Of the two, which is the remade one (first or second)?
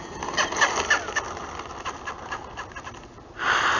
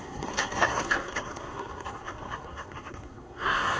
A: second